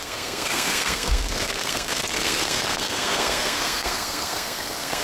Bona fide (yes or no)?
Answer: no